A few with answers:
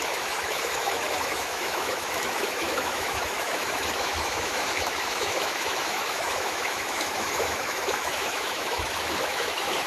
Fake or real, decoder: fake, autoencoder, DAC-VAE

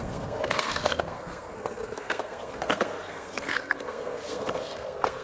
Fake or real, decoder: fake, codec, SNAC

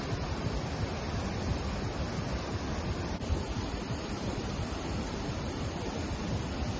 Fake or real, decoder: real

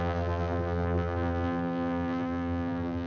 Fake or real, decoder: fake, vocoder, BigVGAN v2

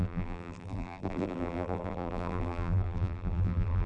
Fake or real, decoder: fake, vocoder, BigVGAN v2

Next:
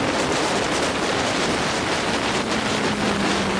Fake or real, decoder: real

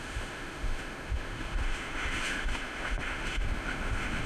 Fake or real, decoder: fake, autoencoder, DAC-VAE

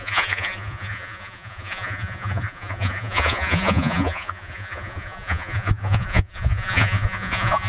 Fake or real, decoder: fake, vocoder, Vocos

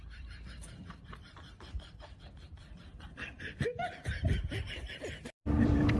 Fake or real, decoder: fake, vocoder, BigVGAN v2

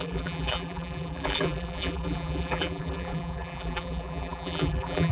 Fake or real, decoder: fake, vocoder, BigVGAN v2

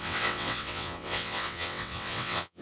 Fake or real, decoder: fake, vocoder, WaveNeXt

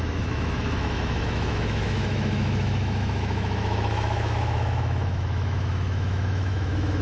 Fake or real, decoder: fake, autoencoder, DAC-VAE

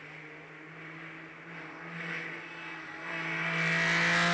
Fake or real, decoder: real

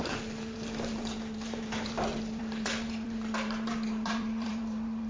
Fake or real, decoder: fake, vocoder, BigVGAN v2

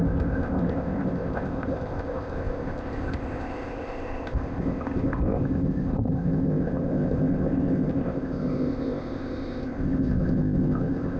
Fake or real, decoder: fake, codec, ZipCodec